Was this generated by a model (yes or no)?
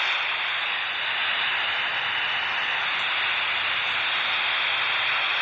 no